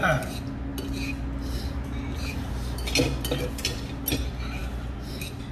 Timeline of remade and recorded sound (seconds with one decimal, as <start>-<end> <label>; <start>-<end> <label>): 0.0-5.5 recorded

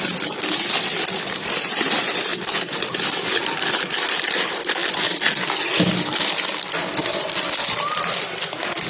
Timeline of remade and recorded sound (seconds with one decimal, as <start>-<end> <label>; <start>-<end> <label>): 0.0-8.9 recorded

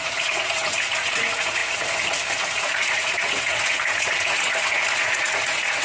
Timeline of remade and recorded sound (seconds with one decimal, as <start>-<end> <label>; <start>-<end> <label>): 0.0-5.8 remade

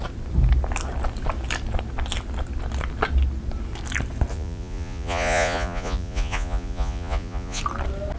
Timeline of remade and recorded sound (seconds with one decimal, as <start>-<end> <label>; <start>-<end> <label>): 0.0-4.3 recorded; 4.3-7.6 remade; 7.6-8.2 recorded

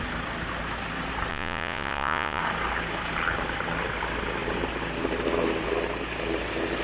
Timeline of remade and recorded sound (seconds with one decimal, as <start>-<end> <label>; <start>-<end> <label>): 0.0-1.3 recorded; 1.3-2.4 remade; 2.4-6.8 recorded

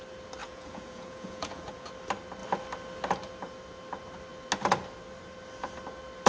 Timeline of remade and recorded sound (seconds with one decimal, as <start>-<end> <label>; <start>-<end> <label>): 0.0-0.4 recorded; 0.4-1.9 remade; 1.9-6.3 recorded

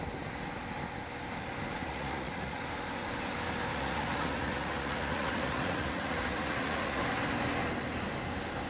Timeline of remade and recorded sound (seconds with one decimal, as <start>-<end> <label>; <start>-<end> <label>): 0.0-1.8 recorded; 1.8-2.6 remade; 2.6-3.7 recorded; 3.7-7.0 remade; 7.0-8.7 recorded

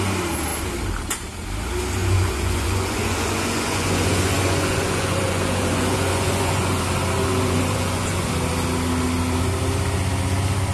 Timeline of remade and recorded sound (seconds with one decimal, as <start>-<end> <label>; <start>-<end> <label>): 0.0-2.0 recorded; 2.0-6.8 remade; 6.8-7.3 recorded; 7.3-8.3 remade; 8.3-10.7 recorded